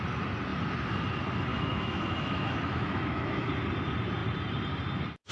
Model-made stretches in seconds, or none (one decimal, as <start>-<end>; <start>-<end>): 1.5-3.5